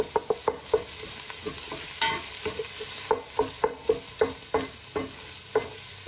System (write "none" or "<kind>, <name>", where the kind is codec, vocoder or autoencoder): none